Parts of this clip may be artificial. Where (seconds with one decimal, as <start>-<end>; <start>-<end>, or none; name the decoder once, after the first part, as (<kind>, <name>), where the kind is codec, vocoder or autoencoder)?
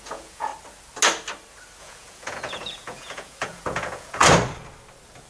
0.0-0.5 (vocoder, Vocos); 1.8-4.2